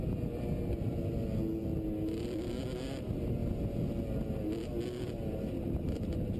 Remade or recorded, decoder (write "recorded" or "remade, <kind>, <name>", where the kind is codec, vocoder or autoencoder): recorded